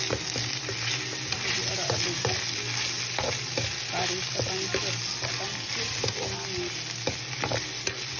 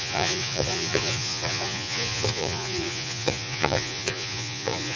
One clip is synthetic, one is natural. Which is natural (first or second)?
first